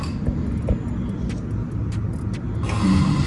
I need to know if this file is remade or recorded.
recorded